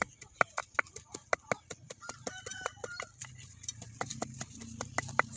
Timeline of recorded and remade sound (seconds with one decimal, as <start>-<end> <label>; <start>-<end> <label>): 0.0-5.4 recorded